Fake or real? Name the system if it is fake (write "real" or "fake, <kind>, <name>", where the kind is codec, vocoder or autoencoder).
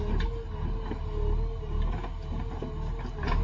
real